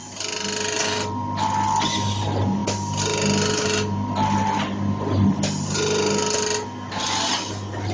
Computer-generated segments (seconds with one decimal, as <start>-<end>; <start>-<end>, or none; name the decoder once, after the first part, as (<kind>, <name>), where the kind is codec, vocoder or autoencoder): none